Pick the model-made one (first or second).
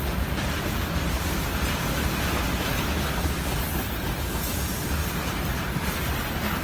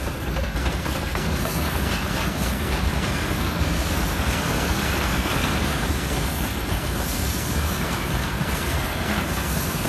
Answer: second